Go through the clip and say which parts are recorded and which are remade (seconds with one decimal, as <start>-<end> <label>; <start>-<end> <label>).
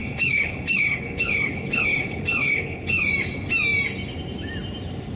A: 0.0-3.1 remade; 3.1-5.2 recorded